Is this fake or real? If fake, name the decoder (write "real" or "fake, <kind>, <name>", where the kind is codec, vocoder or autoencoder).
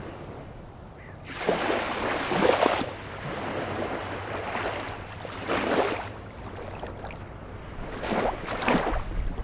real